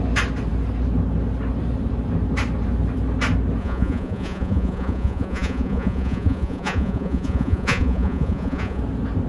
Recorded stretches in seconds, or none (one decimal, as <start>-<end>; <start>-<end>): 0.0-3.6; 8.8-9.3